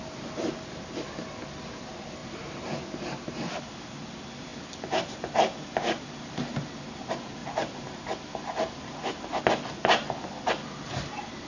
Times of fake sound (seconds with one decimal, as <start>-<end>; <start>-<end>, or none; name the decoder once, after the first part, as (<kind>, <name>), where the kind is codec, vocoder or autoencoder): 2.2-3.6 (vocoder, BigVGAN v2); 7.4-9.4